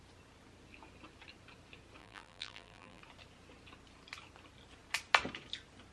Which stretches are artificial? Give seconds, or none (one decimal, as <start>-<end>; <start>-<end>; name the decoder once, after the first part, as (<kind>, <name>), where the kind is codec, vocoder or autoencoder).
2.0-3.0 (vocoder, BigVGAN v2)